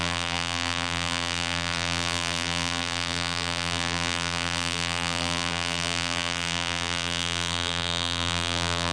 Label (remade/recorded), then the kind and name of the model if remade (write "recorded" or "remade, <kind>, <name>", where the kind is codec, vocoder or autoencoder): remade, vocoder, BigVGAN v2